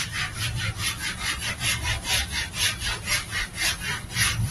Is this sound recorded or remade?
remade